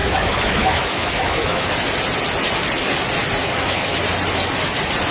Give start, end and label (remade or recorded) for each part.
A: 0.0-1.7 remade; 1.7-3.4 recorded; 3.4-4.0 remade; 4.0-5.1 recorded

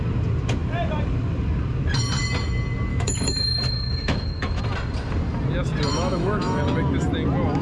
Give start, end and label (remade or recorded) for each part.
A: 0.0-2.9 recorded; 2.9-4.6 remade; 4.6-5.9 recorded; 5.9-6.6 remade; 6.6-7.6 recorded

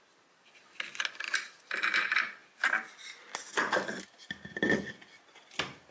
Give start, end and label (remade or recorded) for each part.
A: 0.0-5.9 recorded

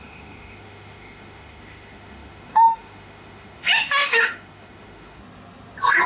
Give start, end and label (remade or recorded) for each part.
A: 0.0-5.2 remade; 5.2-6.1 recorded

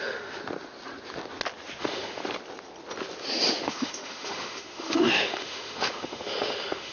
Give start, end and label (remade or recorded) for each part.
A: 0.0-0.4 remade; 0.4-1.8 recorded; 1.8-2.2 remade; 2.2-3.5 recorded; 3.5-6.9 remade